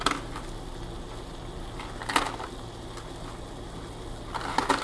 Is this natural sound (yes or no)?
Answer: yes